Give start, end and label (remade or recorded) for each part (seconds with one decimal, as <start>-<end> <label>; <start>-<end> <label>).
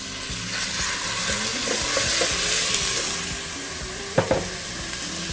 0.0-5.3 recorded